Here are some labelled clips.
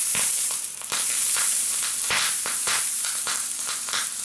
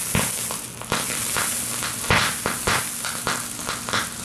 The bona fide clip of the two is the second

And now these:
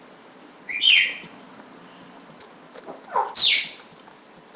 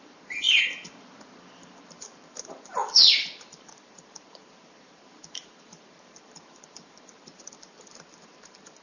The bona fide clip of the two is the first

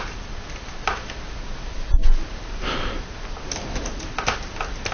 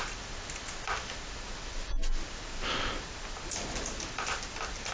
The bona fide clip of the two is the second